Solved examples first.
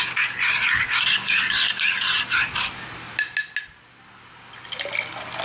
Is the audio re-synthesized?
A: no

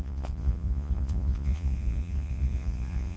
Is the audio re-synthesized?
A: yes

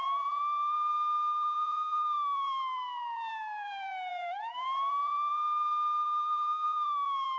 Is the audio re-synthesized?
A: yes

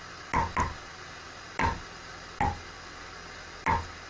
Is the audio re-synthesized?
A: no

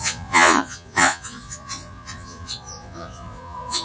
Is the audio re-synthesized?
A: yes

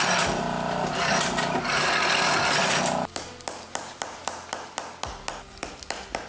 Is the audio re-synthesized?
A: no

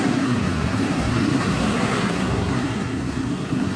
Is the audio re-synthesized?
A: yes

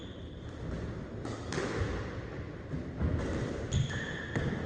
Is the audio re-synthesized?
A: no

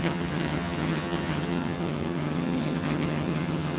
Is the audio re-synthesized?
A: yes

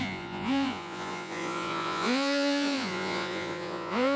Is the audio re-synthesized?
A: yes